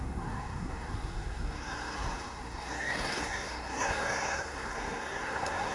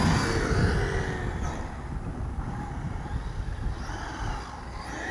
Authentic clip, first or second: second